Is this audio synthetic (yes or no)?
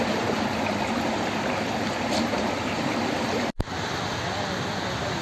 no